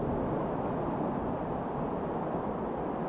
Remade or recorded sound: recorded